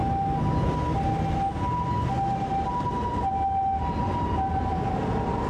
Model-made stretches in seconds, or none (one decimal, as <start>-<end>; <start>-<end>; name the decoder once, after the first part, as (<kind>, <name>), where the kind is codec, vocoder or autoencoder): none